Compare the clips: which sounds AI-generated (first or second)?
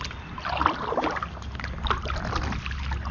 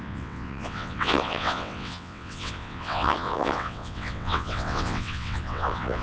second